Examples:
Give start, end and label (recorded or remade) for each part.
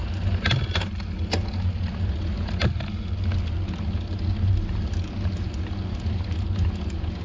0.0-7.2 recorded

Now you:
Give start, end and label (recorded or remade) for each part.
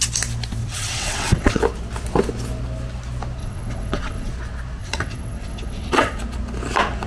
0.0-0.6 recorded; 0.6-1.6 remade; 1.6-3.4 recorded; 3.4-4.3 remade; 4.3-4.8 recorded; 4.8-6.2 remade; 6.2-7.1 recorded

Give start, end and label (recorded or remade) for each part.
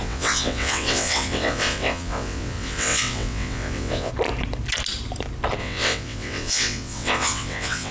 0.0-4.1 remade; 4.1-5.6 recorded; 5.6-7.9 remade